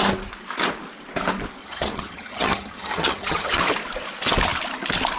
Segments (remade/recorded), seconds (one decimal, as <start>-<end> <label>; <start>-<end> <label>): 0.0-1.6 recorded; 1.6-3.6 remade; 3.6-5.2 recorded